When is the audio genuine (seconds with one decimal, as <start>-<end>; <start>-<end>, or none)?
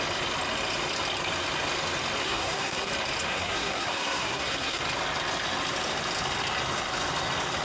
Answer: 0.0-2.2; 2.9-3.3; 4.8-7.6